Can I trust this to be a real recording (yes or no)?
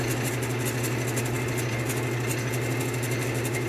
yes